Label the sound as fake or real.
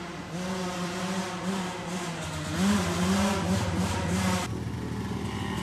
real